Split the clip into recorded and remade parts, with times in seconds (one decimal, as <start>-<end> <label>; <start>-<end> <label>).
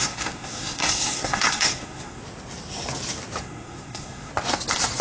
0.0-2.2 remade; 2.2-3.4 recorded; 3.4-4.3 remade; 4.3-5.0 recorded